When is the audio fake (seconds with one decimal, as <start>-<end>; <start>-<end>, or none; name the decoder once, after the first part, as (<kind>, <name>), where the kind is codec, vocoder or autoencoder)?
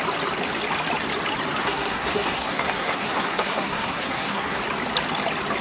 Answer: 1.6-4.6 (codec, SNAC)